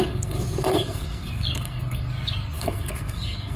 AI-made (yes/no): yes